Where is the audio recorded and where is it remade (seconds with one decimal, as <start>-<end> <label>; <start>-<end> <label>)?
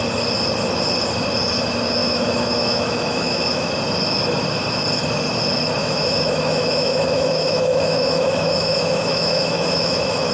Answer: 0.0-2.0 recorded; 2.0-3.7 remade; 3.7-5.8 recorded; 5.8-10.3 remade